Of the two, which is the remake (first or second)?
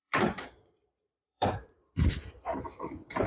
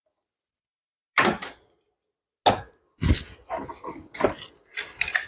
first